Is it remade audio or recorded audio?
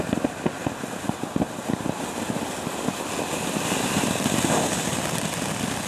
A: recorded